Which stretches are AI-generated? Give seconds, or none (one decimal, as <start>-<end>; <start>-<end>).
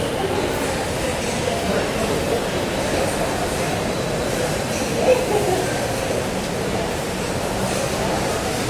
0.0-1.1; 1.8-2.4; 3.1-5.1; 6.0-8.7